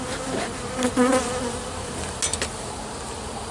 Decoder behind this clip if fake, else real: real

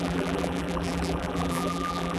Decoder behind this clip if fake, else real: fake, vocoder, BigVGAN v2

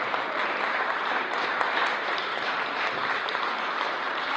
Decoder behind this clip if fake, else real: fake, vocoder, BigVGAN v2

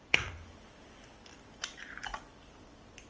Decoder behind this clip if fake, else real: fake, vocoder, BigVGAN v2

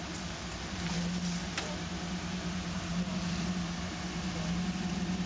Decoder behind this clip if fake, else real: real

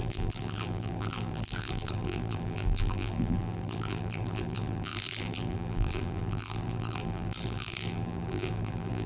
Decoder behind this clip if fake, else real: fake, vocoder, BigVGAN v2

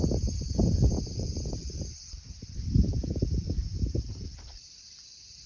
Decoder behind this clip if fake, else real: fake, vocoder, BigVGAN v2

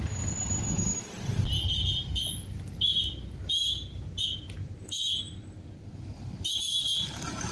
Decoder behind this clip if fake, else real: real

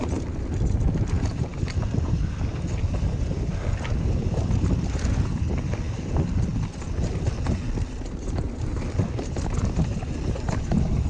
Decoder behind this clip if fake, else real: real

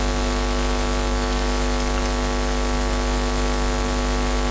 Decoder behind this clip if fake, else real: real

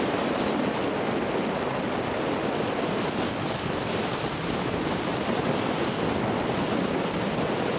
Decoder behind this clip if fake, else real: real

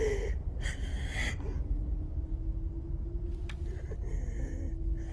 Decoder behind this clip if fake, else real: real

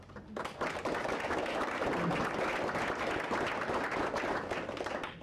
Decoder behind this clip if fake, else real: real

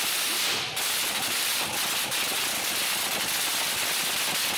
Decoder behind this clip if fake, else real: real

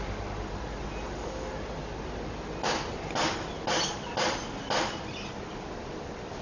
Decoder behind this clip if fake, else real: real